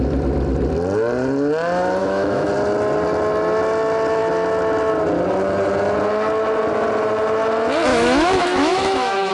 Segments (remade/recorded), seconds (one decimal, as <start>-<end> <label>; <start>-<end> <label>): 0.0-2.0 recorded; 2.0-2.5 remade; 2.5-7.9 recorded; 7.9-9.3 remade